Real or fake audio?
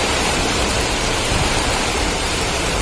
fake